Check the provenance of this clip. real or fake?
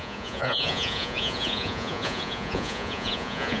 fake